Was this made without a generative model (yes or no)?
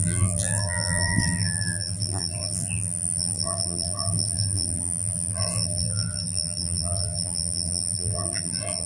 no